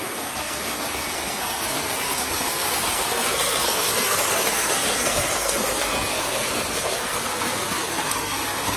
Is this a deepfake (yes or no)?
yes